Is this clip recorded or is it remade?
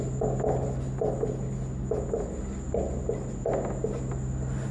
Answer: recorded